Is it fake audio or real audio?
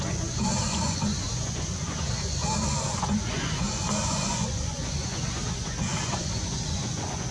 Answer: fake